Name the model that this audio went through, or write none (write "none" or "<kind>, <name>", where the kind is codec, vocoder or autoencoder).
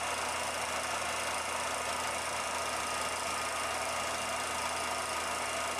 none